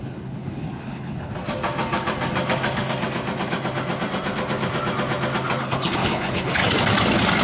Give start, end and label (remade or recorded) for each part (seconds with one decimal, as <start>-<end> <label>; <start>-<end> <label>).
0.0-1.3 remade; 1.3-5.6 recorded; 5.6-6.6 remade; 6.6-7.4 recorded